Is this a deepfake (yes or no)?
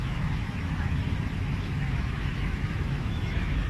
yes